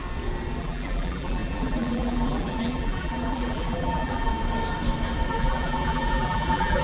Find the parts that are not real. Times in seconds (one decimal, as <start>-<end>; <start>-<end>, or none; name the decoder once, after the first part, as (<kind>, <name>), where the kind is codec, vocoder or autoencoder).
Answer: 0.6-4.3 (vocoder, BigVGAN v2); 5.3-6.8